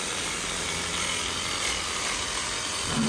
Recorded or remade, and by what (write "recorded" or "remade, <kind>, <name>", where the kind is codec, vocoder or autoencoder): recorded